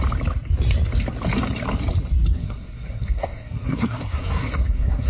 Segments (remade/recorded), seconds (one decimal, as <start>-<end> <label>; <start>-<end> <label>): 0.0-2.3 recorded; 2.3-5.1 remade